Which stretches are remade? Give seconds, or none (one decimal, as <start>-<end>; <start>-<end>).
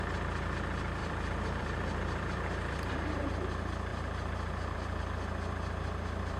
1.0-3.5; 3.9-5.0